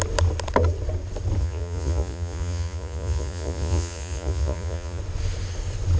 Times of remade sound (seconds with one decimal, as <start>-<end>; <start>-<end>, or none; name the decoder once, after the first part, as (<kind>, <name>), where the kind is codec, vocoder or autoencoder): 1.4-5.0 (vocoder, Vocos)